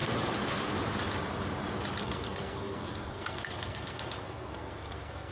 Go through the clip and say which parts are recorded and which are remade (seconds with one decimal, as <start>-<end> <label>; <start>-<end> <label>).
0.0-2.0 recorded; 2.0-5.3 remade